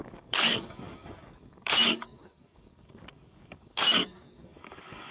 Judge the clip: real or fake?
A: fake